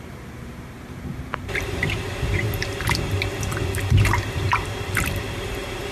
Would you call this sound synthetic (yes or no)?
yes